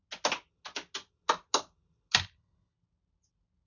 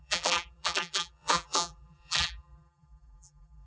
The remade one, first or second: second